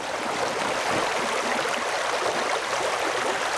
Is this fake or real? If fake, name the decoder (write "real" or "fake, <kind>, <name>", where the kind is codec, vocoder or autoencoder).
real